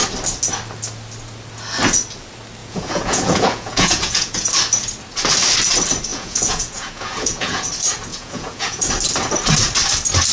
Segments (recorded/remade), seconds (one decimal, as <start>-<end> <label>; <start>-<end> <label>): 0.0-2.6 recorded; 2.6-4.5 remade; 4.5-6.1 recorded; 6.1-7.7 remade; 7.7-8.1 recorded; 8.1-8.9 remade; 8.9-10.3 recorded